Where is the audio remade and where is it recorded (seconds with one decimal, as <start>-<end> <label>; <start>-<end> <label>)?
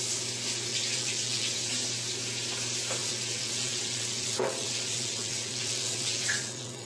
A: 0.0-0.7 recorded; 0.7-1.7 remade; 1.7-3.0 recorded; 3.0-6.9 remade